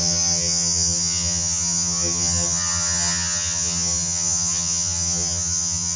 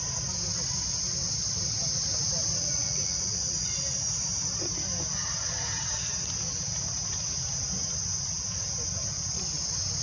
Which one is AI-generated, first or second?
first